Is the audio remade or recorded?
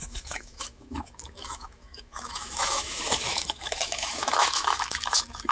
remade